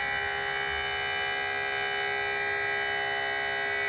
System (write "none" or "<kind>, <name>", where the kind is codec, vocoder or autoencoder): none